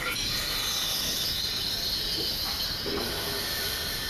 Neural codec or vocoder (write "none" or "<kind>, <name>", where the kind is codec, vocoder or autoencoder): none